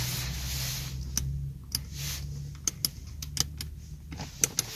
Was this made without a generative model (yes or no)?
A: yes